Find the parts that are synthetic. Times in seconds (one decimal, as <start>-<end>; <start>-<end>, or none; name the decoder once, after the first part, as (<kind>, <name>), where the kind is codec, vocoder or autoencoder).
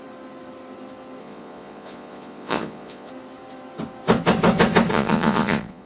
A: 1.2-3.1 (vocoder, Vocos); 4.9-5.9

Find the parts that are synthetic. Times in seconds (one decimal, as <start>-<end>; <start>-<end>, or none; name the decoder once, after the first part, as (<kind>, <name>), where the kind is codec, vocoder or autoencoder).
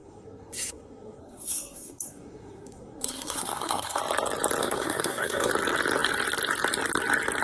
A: 0.0-4.0 (codec, SNAC); 4.6-5.5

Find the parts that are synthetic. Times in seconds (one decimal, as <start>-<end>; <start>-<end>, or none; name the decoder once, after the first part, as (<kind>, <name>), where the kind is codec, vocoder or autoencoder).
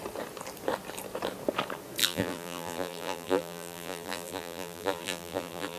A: 2.0-5.8 (vocoder, BigVGAN v2)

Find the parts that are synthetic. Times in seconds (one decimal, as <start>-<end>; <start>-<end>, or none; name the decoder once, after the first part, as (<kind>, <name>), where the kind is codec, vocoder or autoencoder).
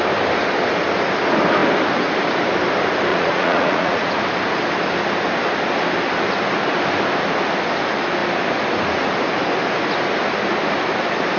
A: 3.1-4.1 (vocoder, Vocos)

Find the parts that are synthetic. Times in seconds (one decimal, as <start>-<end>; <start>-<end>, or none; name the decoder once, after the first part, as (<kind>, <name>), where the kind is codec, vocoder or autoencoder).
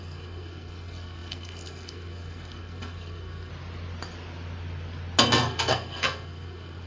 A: 0.0-3.5 (codec, SNAC); 5.2-6.9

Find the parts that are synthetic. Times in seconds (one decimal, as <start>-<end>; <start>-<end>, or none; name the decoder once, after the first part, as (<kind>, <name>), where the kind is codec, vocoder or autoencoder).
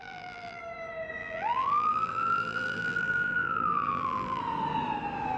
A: 0.0-0.6 (vocoder, BigVGAN v2); 1.2-4.4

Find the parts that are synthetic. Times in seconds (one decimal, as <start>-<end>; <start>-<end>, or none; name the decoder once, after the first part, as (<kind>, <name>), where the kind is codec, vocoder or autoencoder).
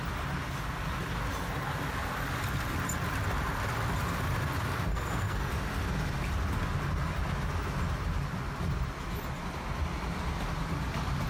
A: 4.9-5.5 (codec, SNAC)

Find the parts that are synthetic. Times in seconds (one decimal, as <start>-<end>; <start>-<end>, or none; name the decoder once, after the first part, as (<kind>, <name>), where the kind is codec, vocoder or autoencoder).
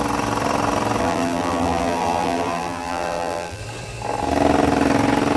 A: 1.0-3.6 (vocoder, BigVGAN v2)